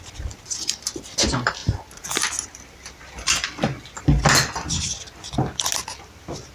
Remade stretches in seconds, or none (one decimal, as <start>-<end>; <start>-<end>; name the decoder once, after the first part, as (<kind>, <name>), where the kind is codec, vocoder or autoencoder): none